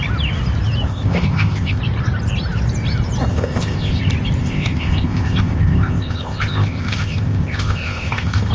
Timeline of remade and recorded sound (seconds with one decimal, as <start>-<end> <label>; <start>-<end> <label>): 0.0-0.9 recorded; 0.9-1.8 remade; 1.8-3.3 recorded; 3.3-4.0 remade; 4.0-4.4 recorded; 4.4-8.5 remade